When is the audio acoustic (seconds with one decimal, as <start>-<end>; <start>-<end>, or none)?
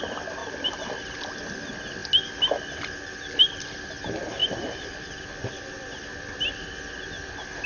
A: 0.0-0.4; 1.0-4.4; 5.5-7.7